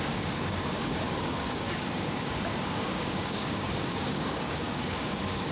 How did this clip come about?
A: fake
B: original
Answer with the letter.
A